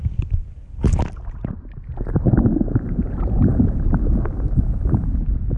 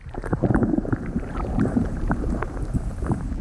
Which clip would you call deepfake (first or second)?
second